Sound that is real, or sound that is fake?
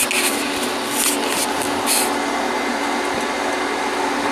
real